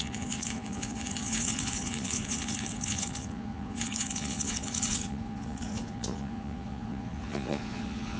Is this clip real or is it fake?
fake